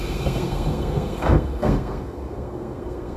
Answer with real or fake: fake